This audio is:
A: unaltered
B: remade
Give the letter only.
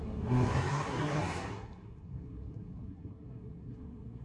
B